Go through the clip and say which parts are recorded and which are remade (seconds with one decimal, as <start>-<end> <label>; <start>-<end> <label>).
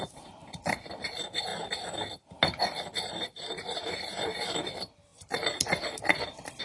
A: 0.0-0.4 remade; 0.4-0.9 recorded; 0.9-1.5 remade; 1.5-3.1 recorded; 3.1-5.1 remade; 5.1-6.6 recorded